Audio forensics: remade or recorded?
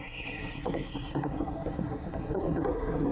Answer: remade